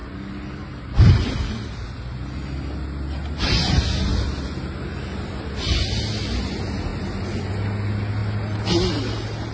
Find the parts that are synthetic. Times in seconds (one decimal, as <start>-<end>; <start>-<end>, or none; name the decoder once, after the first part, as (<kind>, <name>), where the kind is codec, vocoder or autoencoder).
none